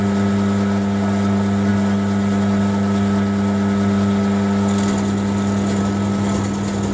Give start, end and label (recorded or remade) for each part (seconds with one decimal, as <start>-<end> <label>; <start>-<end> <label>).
0.0-6.9 recorded